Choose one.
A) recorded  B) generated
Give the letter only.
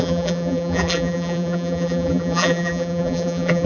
B